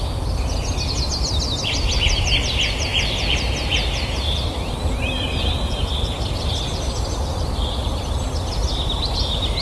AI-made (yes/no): no